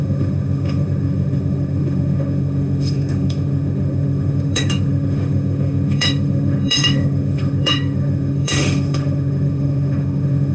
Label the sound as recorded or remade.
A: remade